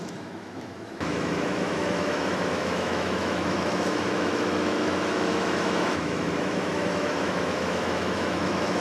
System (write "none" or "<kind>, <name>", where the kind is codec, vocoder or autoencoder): autoencoder, DAC-VAE